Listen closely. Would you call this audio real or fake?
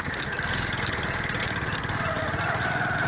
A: real